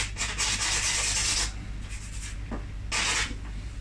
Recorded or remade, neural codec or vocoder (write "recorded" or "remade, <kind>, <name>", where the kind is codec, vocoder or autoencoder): recorded